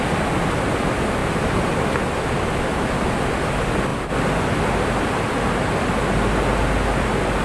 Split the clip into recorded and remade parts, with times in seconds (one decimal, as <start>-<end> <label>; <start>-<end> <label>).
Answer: 0.0-7.4 recorded